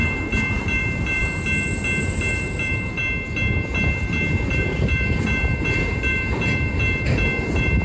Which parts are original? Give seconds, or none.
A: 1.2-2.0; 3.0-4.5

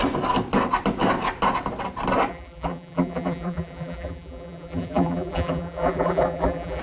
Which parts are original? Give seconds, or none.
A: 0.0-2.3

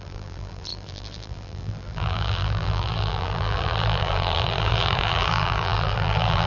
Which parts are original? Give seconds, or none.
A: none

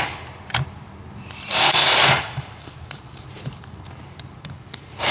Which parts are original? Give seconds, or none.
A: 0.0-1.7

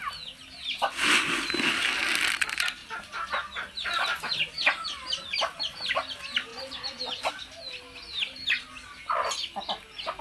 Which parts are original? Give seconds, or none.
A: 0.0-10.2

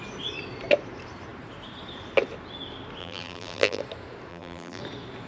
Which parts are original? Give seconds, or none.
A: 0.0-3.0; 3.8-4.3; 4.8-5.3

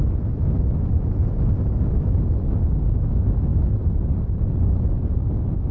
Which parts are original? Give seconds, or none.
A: 0.0-5.7

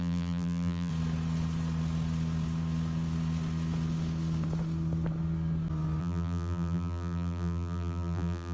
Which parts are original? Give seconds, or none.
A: 0.9-6.0